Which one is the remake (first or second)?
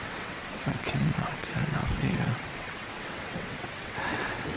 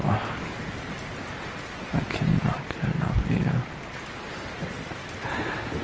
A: first